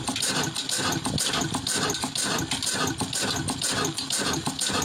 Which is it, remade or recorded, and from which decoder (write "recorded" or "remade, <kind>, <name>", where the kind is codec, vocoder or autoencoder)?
recorded